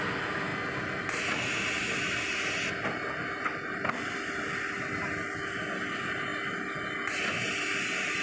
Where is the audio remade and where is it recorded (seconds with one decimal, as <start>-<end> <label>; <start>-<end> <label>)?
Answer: 0.0-8.2 recorded

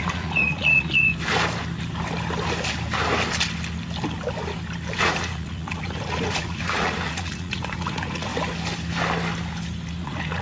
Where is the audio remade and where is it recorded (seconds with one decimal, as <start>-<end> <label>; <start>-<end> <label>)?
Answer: 0.0-1.1 remade; 1.1-5.0 recorded; 5.0-8.3 remade; 8.3-10.0 recorded; 10.0-10.4 remade

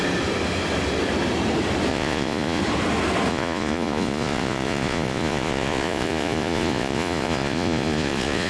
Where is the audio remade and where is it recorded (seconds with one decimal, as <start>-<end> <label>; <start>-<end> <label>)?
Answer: 0.0-1.9 recorded; 1.9-2.6 remade; 2.6-3.3 recorded; 3.3-8.5 remade

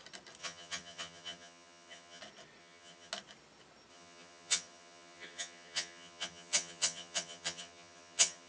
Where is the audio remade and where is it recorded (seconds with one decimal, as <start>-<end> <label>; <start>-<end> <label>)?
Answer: 0.0-0.4 recorded; 0.4-2.2 remade; 2.2-2.6 recorded; 2.6-3.1 remade; 3.1-3.9 recorded; 3.9-8.5 remade

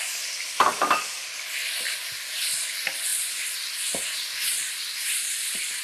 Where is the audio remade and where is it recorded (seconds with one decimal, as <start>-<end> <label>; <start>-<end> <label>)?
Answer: 0.0-5.8 recorded

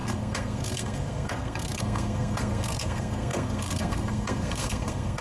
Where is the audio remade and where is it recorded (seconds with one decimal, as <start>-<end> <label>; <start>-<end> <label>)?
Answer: 0.0-5.2 remade

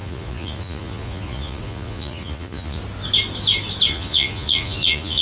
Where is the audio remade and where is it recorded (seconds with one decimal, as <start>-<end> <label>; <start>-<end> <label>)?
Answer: 0.0-2.8 remade; 2.8-3.9 recorded; 3.9-5.2 remade

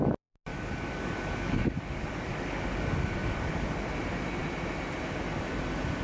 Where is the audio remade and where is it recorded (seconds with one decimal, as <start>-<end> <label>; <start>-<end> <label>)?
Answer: 0.0-0.5 recorded; 0.5-3.6 remade; 3.6-6.0 recorded